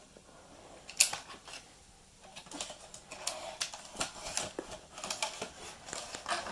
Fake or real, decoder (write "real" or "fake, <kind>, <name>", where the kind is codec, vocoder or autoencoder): real